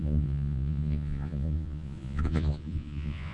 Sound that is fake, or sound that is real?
fake